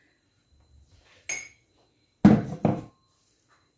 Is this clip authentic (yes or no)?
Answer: yes